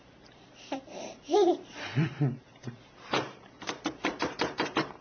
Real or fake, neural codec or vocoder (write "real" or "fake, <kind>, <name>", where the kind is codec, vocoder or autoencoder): fake, vocoder, BigVGAN v2